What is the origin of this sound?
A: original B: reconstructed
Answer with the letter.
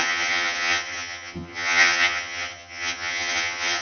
B